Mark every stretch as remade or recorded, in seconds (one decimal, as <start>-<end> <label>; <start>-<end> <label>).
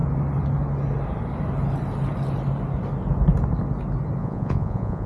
0.0-4.2 recorded; 4.2-5.1 remade